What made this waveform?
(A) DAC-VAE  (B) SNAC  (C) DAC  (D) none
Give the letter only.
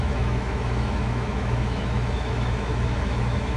A